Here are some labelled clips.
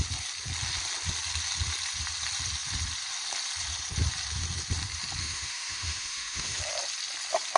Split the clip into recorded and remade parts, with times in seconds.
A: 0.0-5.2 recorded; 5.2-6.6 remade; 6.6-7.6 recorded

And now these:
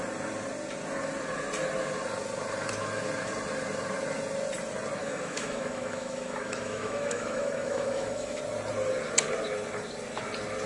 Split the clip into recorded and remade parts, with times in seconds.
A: 0.0-5.0 recorded; 5.0-8.4 remade; 8.4-10.7 recorded

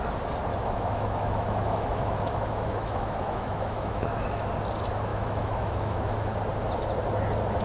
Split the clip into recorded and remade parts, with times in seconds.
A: 0.0-0.5 recorded; 0.5-4.5 remade; 4.5-5.1 recorded; 5.1-6.4 remade; 6.4-7.6 recorded